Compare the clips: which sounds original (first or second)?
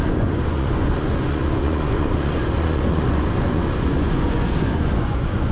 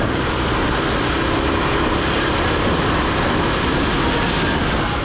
second